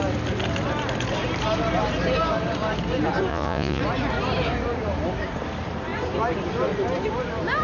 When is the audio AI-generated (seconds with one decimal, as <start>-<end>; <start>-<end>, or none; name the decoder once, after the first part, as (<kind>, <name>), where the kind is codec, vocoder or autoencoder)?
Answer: 3.3-3.8 (vocoder, Vocos)

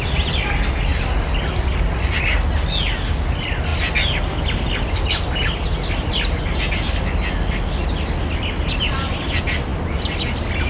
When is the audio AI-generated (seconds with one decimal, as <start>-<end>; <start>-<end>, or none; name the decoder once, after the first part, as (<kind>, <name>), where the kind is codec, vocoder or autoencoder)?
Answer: none

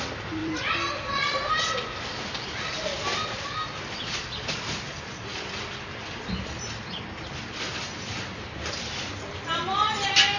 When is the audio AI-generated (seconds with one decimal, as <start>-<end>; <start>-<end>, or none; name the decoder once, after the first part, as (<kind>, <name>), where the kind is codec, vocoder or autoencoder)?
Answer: 0.4-4.5 (vocoder, BigVGAN v2); 5.3-9.0

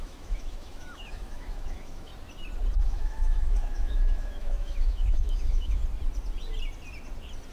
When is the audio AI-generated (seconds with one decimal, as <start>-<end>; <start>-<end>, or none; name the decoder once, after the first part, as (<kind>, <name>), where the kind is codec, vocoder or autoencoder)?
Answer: 0.0-2.1 (autoencoder, DAC-VAE); 2.8-5.8